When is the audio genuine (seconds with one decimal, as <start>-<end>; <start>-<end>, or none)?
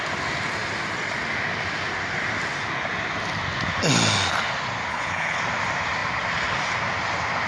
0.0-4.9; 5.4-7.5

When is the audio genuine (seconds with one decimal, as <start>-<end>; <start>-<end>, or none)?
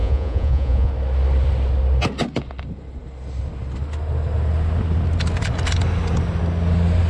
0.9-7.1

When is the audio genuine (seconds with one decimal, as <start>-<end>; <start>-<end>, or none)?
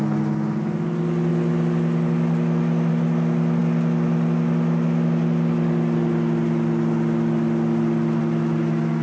0.0-9.0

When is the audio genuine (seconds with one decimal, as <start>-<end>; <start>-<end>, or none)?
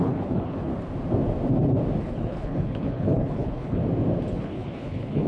0.7-2.0; 3.8-4.3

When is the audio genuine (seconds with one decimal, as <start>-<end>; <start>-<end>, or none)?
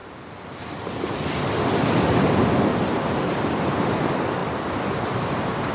0.0-2.7; 3.5-5.7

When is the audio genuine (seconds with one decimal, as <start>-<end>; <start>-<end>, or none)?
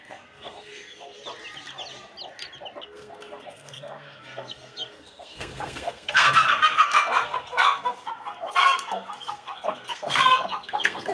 1.1-2.8